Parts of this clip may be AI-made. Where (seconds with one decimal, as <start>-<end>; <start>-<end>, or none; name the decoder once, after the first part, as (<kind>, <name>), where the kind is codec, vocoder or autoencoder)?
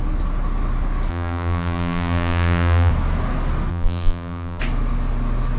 1.1-2.9 (vocoder, BigVGAN v2); 3.7-4.6